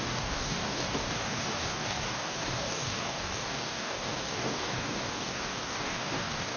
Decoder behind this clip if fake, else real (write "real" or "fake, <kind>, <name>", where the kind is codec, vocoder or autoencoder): fake, codec, DAC